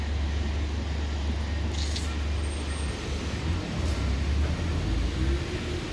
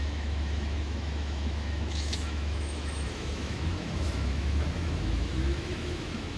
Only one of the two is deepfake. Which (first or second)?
second